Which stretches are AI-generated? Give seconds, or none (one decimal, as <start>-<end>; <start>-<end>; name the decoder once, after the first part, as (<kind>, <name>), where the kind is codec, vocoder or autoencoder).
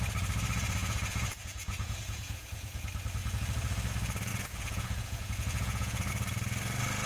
0.8-2.8 (vocoder, Vocos); 4.3-6.1